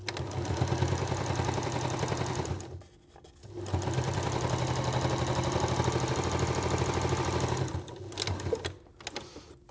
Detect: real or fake real